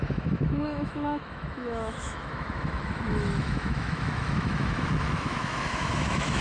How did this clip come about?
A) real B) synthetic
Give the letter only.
B